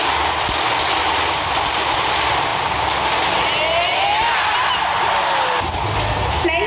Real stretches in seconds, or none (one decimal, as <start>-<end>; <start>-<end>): 0.0-6.7